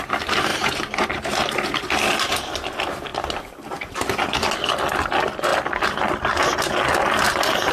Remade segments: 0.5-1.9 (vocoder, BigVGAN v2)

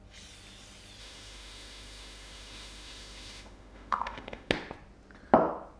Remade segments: 1.0-4.5 (autoencoder, DAC-VAE)

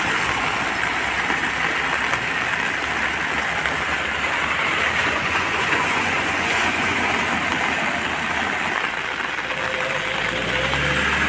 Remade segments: 5.0-7.1 (vocoder, Vocos)

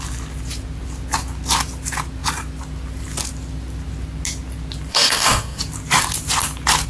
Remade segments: 4.9-5.6 (codec, DAC)

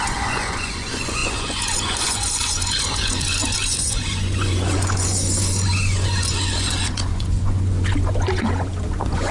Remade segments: 0.0-9.3 (vocoder, Vocos)